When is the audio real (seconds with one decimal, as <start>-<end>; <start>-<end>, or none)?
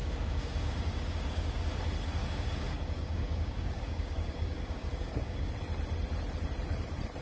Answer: 1.7-2.2; 5.5-7.2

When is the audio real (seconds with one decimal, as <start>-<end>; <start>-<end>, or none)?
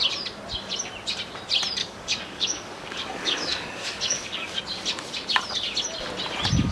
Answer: 0.0-1.8; 4.6-6.7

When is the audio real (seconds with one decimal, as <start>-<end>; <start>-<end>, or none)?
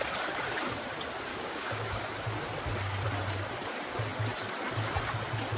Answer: 0.0-1.3; 2.0-5.6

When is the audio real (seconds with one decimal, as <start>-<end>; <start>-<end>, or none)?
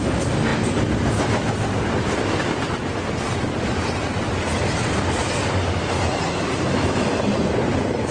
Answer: 0.0-8.1